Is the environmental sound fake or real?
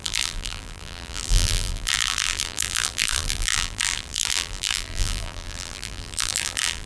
fake